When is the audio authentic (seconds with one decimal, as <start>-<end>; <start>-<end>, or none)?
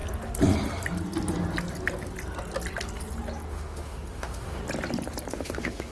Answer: 0.0-3.5; 4.6-5.3